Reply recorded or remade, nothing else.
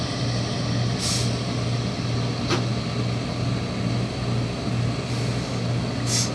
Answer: recorded